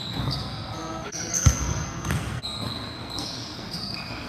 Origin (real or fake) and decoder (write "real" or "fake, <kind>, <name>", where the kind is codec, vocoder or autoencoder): fake, codec, SNAC